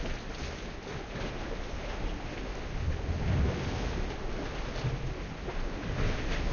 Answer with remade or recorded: recorded